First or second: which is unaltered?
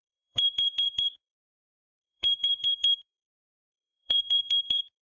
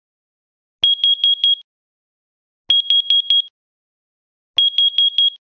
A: second